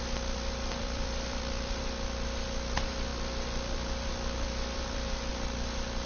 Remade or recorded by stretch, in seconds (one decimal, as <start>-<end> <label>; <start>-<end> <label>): 0.0-0.8 recorded; 0.8-1.8 remade; 1.8-3.1 recorded; 3.1-5.3 remade; 5.3-6.1 recorded